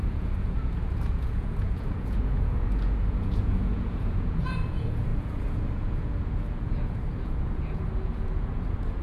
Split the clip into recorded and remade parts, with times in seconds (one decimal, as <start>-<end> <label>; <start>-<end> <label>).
0.0-9.0 remade